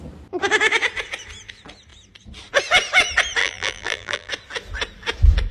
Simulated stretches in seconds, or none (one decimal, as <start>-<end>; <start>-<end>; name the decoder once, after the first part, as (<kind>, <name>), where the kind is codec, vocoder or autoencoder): 3.4-4.3 (vocoder, BigVGAN v2)